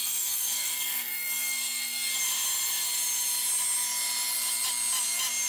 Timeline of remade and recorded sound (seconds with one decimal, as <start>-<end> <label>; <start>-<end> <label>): 0.0-2.1 remade; 2.1-5.5 recorded